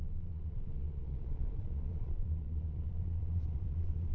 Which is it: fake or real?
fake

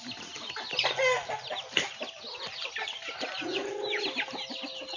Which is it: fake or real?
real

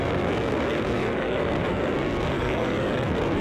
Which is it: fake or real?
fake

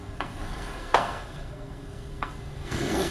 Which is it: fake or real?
fake